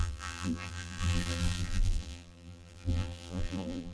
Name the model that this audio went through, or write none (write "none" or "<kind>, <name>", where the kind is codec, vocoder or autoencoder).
vocoder, BigVGAN v2